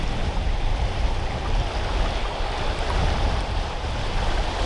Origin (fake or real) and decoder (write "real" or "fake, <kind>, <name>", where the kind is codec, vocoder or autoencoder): real